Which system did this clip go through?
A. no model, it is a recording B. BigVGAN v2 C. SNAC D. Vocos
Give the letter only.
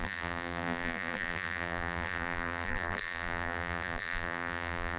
B